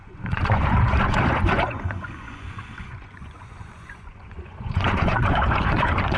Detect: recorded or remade remade